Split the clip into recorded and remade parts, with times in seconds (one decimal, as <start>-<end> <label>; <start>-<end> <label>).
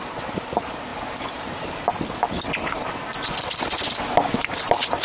0.0-0.9 recorded; 0.9-3.9 remade; 3.9-5.0 recorded